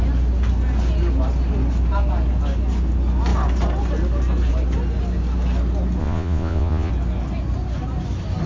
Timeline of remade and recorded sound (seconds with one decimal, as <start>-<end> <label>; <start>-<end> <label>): 0.0-6.0 recorded; 6.0-6.9 remade; 6.9-8.5 recorded